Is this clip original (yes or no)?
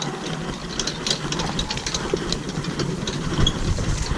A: yes